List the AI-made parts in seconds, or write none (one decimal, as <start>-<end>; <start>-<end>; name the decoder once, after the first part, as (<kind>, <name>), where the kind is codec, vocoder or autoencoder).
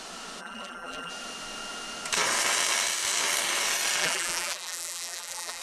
0.4-1.1 (vocoder, BigVGAN v2); 4.0-5.6